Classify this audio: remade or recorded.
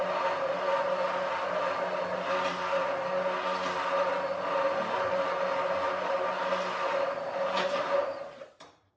recorded